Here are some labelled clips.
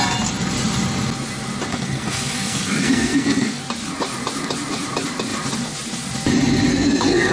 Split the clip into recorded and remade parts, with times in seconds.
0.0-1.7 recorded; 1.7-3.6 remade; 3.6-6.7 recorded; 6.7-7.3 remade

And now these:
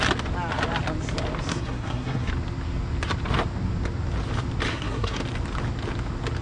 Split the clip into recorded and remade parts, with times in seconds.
0.0-1.5 recorded; 1.5-2.3 remade; 2.3-4.7 recorded; 4.7-5.2 remade; 5.2-6.4 recorded

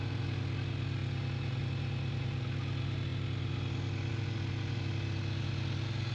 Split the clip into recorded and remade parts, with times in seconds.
0.0-6.1 recorded

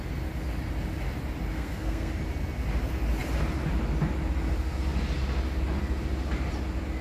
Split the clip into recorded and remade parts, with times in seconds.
0.0-1.5 recorded; 1.5-2.1 remade; 2.1-7.0 recorded

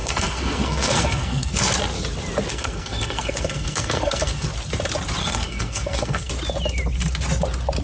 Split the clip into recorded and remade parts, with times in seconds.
0.0-1.7 remade; 1.7-2.5 recorded; 2.5-4.5 remade; 4.5-5.2 recorded; 5.2-6.3 remade; 6.3-7.8 recorded

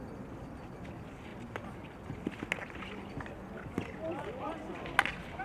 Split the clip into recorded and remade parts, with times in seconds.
0.0-5.4 recorded

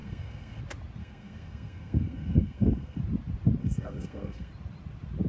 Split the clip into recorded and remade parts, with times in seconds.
0.0-0.6 remade; 0.6-1.0 recorded; 1.0-3.0 remade; 3.0-3.6 recorded; 3.6-4.5 remade; 4.5-5.3 recorded

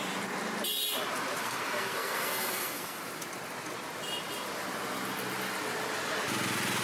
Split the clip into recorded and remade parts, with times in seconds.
0.0-1.4 recorded; 1.4-3.0 remade; 3.0-6.8 recorded